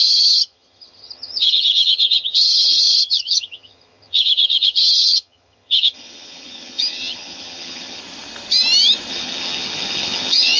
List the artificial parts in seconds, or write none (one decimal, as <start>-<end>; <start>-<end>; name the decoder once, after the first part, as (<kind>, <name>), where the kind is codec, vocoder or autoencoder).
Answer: 0.0-8.0 (vocoder, HiFi-GAN); 9.1-10.6